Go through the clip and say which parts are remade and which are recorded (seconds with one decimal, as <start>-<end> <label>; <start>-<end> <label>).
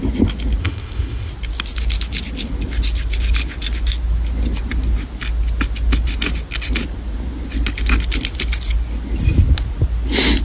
0.0-0.6 recorded; 0.6-1.3 remade; 1.3-10.4 recorded